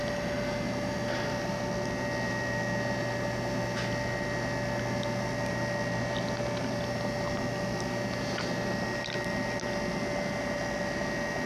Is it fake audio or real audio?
real